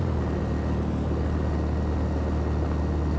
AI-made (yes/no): no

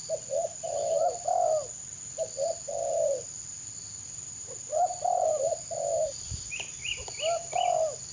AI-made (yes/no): no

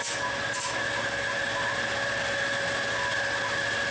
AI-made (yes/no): no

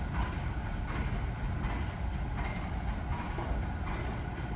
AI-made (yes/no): no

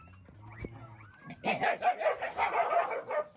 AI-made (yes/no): no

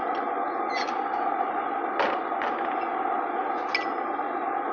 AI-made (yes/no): no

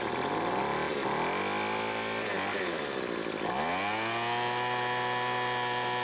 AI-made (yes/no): no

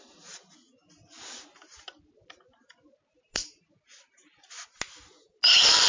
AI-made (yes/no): no